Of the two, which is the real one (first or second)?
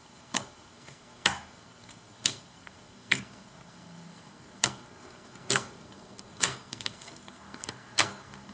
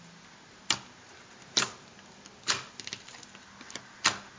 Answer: second